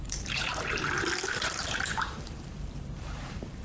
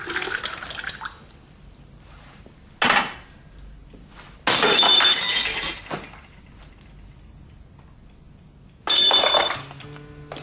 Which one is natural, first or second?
second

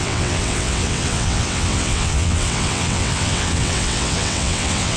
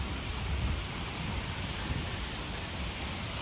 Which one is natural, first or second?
second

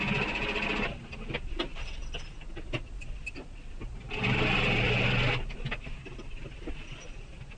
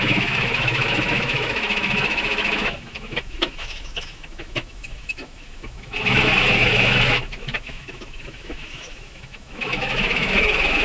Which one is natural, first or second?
first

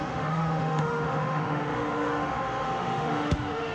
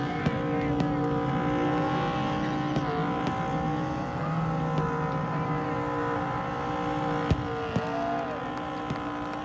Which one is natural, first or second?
second